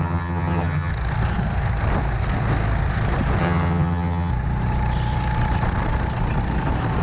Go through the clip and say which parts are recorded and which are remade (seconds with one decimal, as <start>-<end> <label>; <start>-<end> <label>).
0.0-0.9 remade; 0.9-3.4 recorded; 3.4-4.3 remade; 4.3-7.0 recorded